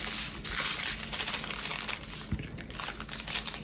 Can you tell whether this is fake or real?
real